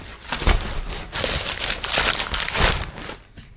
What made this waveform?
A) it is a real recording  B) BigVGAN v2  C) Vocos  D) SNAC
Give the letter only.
A